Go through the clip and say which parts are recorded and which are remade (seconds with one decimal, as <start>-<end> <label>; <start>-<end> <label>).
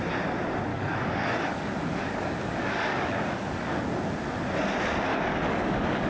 0.0-0.7 recorded; 0.7-3.8 remade; 3.8-5.1 recorded; 5.1-6.1 remade